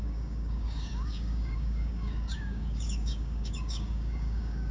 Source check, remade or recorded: remade